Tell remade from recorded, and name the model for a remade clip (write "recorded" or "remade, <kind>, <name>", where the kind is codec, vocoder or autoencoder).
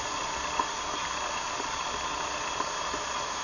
recorded